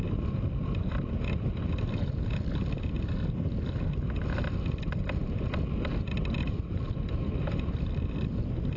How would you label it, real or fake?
real